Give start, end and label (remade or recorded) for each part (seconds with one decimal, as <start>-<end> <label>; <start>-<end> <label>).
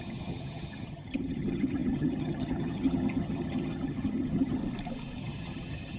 0.0-4.6 remade; 4.6-5.2 recorded; 5.2-6.0 remade